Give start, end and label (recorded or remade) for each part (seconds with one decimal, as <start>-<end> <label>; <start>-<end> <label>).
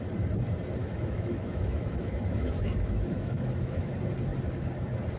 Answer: 0.0-0.8 recorded; 0.8-3.9 remade; 3.9-5.2 recorded